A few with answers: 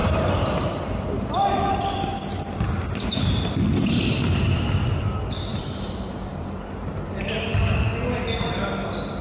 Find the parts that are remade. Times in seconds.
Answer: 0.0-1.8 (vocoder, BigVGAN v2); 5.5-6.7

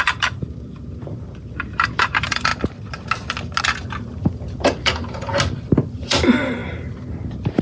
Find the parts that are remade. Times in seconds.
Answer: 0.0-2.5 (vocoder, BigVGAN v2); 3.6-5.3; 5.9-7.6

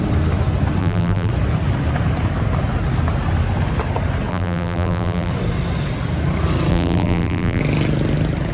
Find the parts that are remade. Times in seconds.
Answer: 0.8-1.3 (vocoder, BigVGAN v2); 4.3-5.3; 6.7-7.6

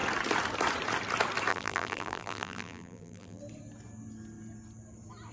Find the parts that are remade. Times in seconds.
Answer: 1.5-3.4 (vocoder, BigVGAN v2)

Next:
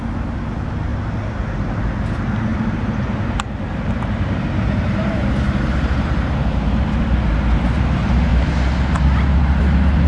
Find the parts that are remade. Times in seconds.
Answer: 2.5-7.8 (vocoder, BigVGAN v2)